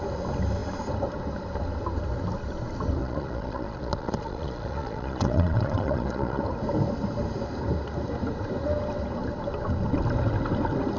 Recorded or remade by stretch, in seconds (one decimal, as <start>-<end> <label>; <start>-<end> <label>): 0.0-3.0 recorded; 3.0-6.4 remade; 6.4-11.0 recorded